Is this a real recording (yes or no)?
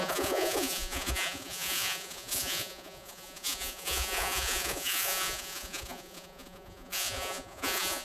no